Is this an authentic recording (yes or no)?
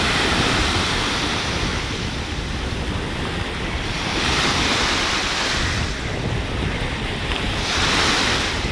no